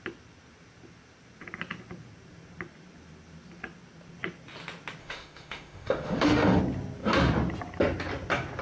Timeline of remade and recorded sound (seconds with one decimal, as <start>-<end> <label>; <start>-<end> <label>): 0.0-5.0 recorded; 5.0-6.6 remade; 6.6-8.6 recorded